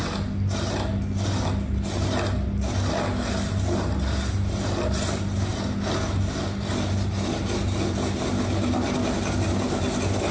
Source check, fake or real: real